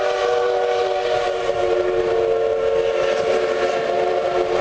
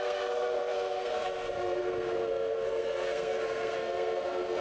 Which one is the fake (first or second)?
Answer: second